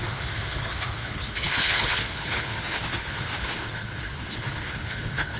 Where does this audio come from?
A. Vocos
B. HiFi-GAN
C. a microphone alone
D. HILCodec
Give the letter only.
D